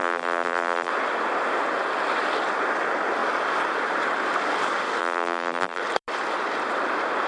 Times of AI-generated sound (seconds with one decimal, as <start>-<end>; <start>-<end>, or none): 0.0-0.9; 5.0-5.8